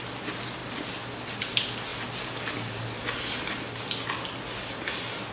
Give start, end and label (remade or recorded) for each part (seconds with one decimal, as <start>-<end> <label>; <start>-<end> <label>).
0.0-5.3 recorded

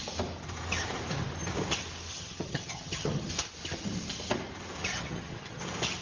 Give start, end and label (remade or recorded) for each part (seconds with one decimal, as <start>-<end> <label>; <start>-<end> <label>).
0.0-2.1 recorded; 2.1-3.3 remade; 3.3-4.9 recorded; 4.9-5.6 remade; 5.6-6.0 recorded

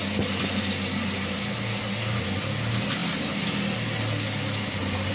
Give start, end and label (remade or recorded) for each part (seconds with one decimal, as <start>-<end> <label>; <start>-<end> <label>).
0.0-5.1 recorded

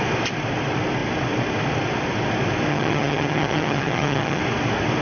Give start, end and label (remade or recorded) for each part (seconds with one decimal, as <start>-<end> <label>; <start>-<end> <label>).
0.0-2.7 recorded; 2.7-4.4 remade; 4.4-5.0 recorded

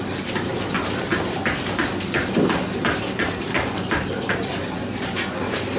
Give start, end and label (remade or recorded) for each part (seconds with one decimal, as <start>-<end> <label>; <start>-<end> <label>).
0.0-5.8 recorded

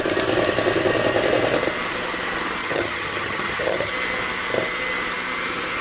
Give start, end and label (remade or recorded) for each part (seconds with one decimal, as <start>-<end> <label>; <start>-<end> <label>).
0.0-2.6 recorded; 2.6-3.9 remade; 3.9-5.8 recorded

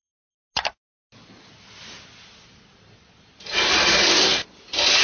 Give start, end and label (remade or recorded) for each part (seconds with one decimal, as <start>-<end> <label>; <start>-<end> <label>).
0.0-5.0 recorded